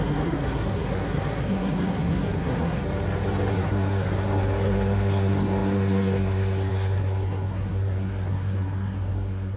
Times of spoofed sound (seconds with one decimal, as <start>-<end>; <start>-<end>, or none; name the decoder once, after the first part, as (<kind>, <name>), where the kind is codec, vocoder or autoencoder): 0.0-2.8 (codec, SNAC); 3.5-9.6